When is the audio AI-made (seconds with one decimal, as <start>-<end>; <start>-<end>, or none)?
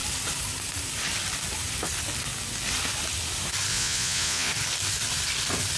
3.7-4.5